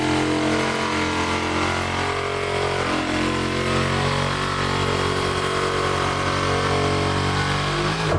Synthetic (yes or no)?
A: no